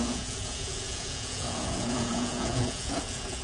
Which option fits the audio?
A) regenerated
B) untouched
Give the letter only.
A